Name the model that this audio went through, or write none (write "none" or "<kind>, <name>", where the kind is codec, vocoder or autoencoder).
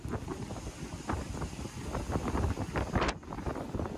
none